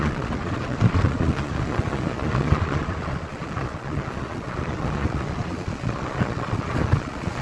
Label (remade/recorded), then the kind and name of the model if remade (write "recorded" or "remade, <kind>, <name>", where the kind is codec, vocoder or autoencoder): remade, vocoder, Vocos